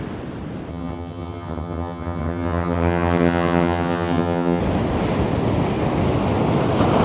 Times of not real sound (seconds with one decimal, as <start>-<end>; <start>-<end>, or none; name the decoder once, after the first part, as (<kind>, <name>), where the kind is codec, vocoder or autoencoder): 0.7-4.6 (vocoder, HiFi-GAN)